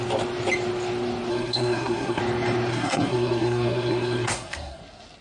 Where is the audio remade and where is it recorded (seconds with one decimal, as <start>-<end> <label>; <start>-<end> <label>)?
0.0-1.3 recorded; 1.3-2.2 remade; 2.2-2.7 recorded; 2.7-4.8 remade; 4.8-5.2 recorded